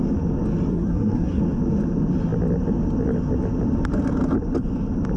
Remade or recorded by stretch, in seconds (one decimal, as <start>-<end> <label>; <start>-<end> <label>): 0.0-0.7 recorded; 0.7-1.4 remade; 1.4-5.2 recorded